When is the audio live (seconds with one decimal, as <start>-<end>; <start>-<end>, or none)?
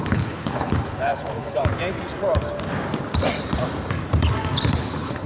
1.7-4.8